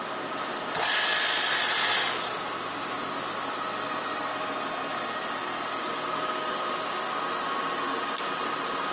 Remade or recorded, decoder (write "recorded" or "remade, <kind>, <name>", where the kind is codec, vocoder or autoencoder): remade, vocoder, BigVGAN v2